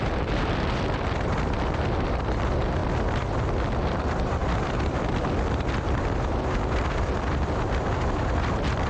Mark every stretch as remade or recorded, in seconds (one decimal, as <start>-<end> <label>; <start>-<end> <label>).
0.0-2.8 remade; 2.8-3.8 recorded; 3.8-8.9 remade